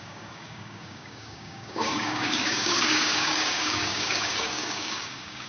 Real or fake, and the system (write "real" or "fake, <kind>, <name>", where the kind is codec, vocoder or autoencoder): fake, codec, DAC